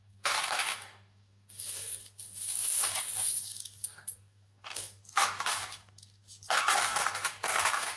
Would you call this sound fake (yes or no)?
yes